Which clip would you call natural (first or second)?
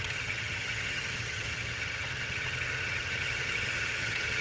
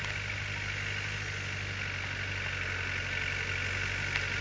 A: second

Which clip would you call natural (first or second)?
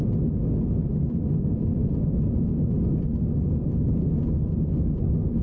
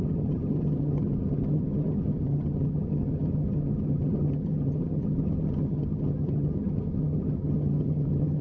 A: first